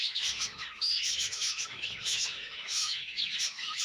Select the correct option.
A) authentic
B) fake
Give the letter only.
B